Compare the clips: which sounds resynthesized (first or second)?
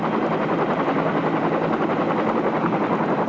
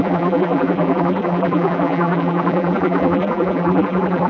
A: second